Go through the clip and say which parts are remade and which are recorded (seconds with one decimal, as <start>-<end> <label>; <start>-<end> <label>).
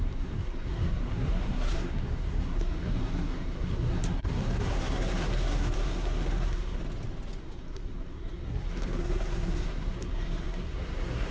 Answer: 0.0-6.8 remade; 6.8-7.4 recorded; 7.4-11.3 remade